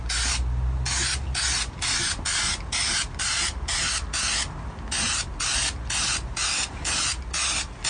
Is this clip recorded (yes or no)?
yes